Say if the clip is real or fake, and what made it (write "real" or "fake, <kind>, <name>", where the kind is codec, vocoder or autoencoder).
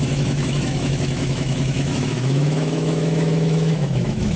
fake, autoencoder, DAC-VAE